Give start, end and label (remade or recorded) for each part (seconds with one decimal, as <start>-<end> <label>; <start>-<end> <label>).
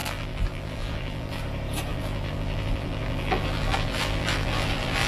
0.0-1.4 remade; 1.4-1.9 recorded; 1.9-5.1 remade